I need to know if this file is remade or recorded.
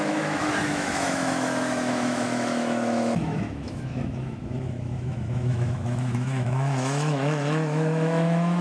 remade